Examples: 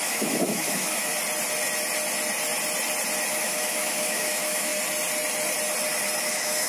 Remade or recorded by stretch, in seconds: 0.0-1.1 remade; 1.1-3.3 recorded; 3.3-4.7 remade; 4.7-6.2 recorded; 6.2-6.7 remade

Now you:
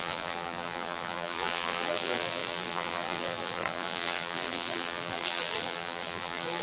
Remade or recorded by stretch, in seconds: 0.0-6.6 remade

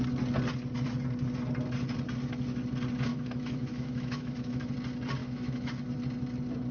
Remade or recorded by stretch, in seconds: 0.0-3.1 recorded; 3.1-4.7 remade; 4.7-5.2 recorded; 5.2-5.7 remade; 5.7-6.7 recorded